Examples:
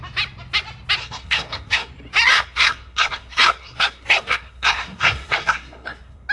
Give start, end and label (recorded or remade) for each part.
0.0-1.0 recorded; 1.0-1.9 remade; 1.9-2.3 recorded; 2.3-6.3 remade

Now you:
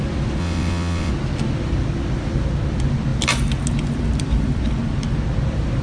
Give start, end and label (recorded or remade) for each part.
0.0-0.4 recorded; 0.4-1.1 remade; 1.1-5.8 recorded